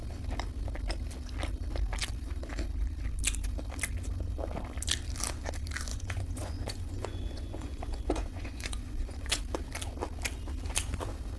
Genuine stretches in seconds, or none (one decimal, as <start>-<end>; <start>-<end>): 0.0-5.9; 9.4-11.4